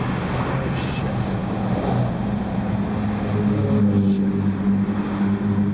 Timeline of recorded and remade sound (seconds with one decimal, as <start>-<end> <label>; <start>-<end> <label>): 0.0-5.7 recorded